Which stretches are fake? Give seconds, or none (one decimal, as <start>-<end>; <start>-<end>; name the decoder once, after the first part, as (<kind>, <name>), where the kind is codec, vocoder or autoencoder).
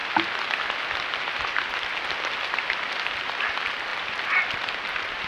3.9-5.3 (vocoder, BigVGAN v2)